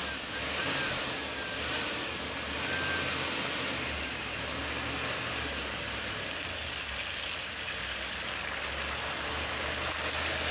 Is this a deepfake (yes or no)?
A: no